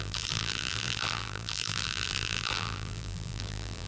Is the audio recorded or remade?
remade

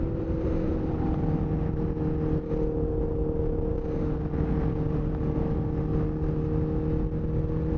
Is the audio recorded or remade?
recorded